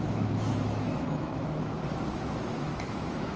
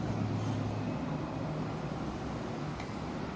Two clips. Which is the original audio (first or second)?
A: second